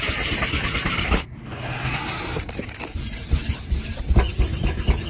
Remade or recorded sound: recorded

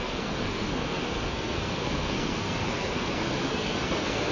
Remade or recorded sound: remade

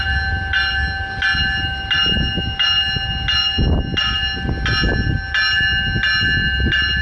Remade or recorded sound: recorded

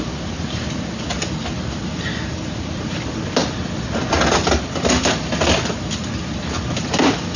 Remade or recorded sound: recorded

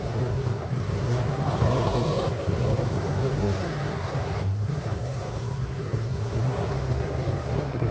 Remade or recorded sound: remade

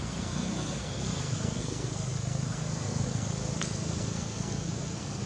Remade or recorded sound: remade